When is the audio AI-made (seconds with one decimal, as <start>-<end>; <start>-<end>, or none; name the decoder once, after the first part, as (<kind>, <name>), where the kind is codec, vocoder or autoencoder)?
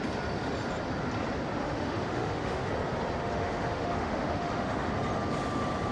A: 1.6-2.7 (autoencoder, DAC-VAE); 3.2-4.9